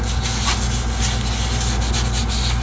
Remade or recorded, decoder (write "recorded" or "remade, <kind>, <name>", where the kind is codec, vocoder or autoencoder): recorded